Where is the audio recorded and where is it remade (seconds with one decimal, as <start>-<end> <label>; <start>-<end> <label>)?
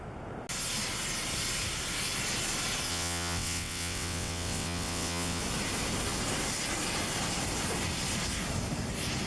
0.0-2.9 recorded; 2.9-5.4 remade; 5.4-9.3 recorded